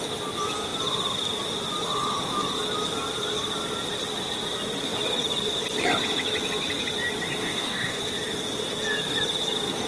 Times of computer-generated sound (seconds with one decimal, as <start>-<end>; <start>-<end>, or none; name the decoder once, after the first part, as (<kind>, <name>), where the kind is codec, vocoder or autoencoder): 7.4-8.0 (codec, DAC)